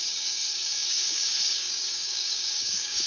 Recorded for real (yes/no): no